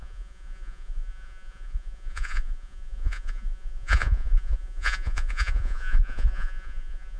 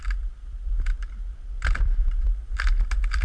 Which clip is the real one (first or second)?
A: second